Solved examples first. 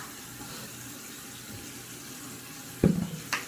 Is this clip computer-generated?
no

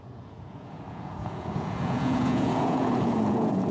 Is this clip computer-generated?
yes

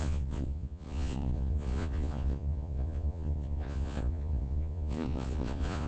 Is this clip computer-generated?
yes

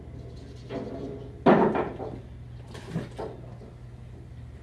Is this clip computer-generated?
no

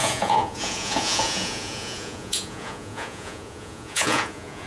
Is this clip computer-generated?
yes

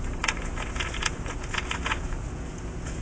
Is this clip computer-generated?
yes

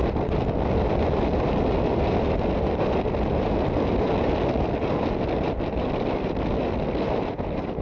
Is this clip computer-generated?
no